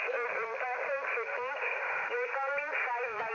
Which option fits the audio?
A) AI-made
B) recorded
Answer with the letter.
B